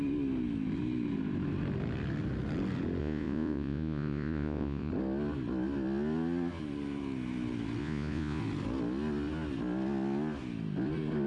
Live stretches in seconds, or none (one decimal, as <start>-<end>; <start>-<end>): 0.0-3.0; 4.9-7.8; 8.4-11.3